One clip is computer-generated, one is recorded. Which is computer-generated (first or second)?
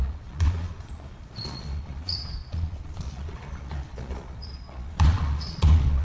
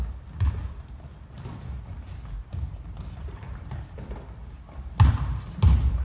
first